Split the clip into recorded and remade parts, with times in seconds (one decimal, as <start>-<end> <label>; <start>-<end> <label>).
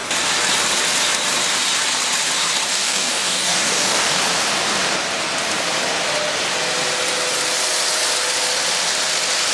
0.0-2.7 recorded; 2.7-4.2 remade; 4.2-9.5 recorded